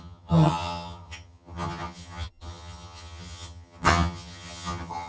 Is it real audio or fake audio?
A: fake